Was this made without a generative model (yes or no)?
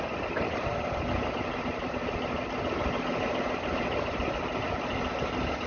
yes